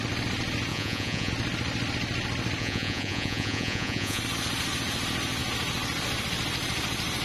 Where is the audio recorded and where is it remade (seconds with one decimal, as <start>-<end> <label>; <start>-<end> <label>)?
0.0-0.7 recorded; 0.7-1.3 remade; 1.3-2.6 recorded; 2.6-4.2 remade; 4.2-7.2 recorded

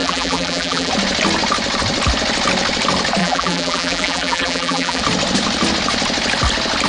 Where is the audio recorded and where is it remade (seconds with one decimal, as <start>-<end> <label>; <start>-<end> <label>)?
0.0-0.9 remade; 0.9-3.2 recorded; 3.2-5.0 remade; 5.0-6.9 recorded

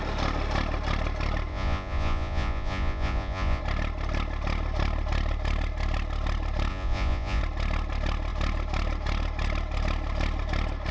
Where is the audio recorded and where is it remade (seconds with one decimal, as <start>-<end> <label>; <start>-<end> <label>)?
0.0-1.5 recorded; 1.5-3.6 remade; 3.6-6.7 recorded; 6.7-7.4 remade; 7.4-10.9 recorded

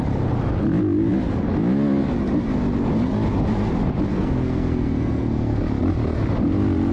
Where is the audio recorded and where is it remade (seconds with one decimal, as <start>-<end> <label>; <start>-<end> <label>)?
0.0-4.1 recorded; 4.1-5.6 remade; 5.6-6.9 recorded

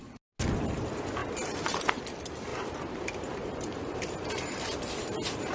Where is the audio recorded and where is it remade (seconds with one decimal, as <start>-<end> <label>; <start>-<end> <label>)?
0.0-1.2 recorded; 1.2-2.0 remade; 2.0-2.5 recorded; 2.5-5.5 remade

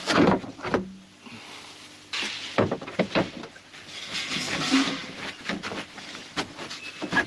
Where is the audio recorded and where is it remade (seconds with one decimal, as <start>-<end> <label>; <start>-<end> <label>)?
0.0-7.3 recorded